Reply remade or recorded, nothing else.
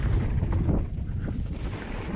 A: remade